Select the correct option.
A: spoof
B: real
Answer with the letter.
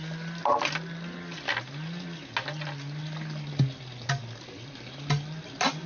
B